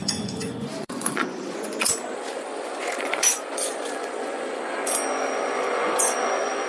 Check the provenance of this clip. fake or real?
fake